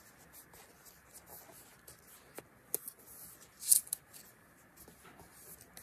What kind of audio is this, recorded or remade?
recorded